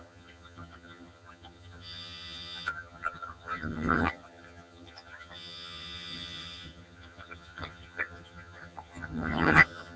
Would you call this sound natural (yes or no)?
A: no